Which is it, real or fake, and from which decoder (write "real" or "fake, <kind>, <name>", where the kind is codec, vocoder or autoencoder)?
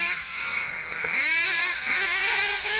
fake, codec, SNAC